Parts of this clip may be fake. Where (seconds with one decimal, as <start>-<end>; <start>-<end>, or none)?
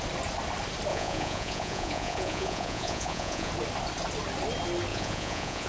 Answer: 0.9-3.5; 4.9-5.7